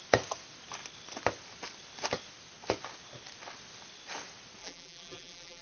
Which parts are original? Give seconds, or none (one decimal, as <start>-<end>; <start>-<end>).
0.0-4.6